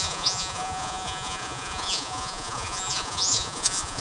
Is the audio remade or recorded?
remade